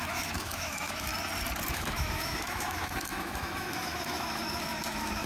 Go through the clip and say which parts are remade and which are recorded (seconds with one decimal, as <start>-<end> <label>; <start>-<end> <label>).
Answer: 0.0-1.1 remade; 1.1-1.7 recorded; 1.7-5.3 remade